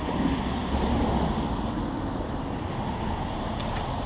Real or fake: real